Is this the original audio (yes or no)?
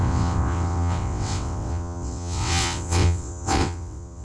no